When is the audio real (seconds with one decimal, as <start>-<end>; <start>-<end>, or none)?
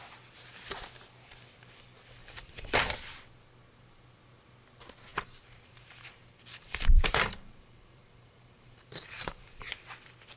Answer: 0.0-2.2; 2.8-5.1; 9.7-10.4